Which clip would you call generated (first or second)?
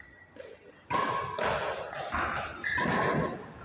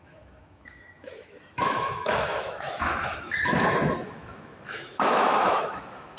second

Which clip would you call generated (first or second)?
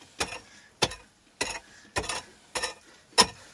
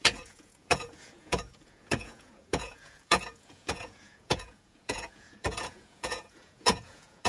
second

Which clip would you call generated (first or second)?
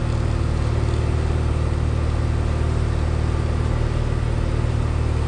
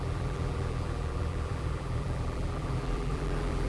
second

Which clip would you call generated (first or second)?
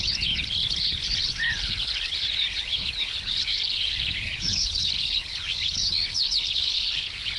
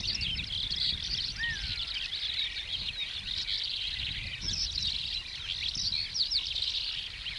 first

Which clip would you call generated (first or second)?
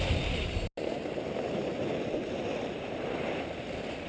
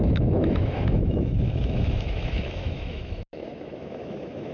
second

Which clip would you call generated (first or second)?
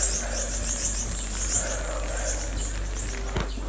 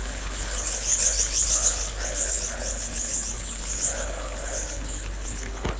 second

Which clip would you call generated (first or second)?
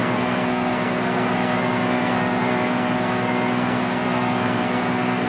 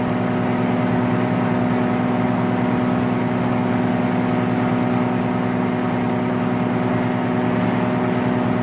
first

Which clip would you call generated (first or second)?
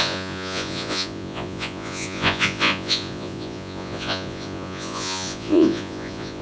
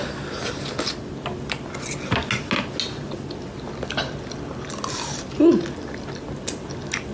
first